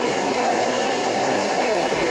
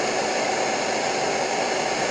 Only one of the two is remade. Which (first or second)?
first